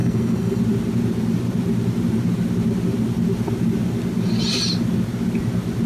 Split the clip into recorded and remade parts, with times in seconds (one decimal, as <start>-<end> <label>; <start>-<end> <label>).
0.0-0.6 remade; 0.6-5.9 recorded